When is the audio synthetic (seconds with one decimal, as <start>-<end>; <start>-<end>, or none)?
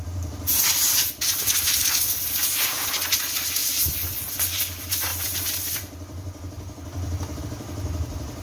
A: 3.6-4.3; 5.1-7.4